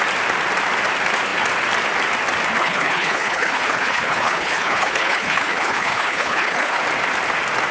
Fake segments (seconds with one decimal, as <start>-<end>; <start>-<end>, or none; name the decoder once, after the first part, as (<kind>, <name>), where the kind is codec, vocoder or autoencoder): 2.6-6.8 (codec, HILCodec)